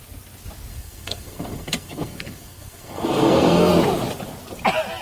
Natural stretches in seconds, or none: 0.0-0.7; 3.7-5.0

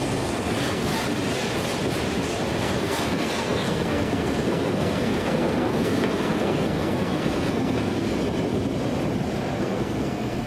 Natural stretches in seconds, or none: 0.9-2.6; 8.1-9.6

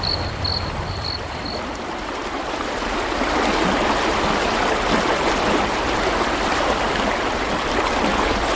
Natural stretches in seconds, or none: 0.0-8.6

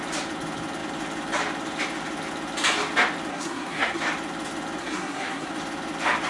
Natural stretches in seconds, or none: 0.0-3.3; 4.0-4.8; 5.5-6.3

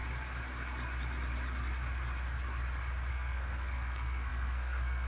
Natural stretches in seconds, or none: 0.0-3.1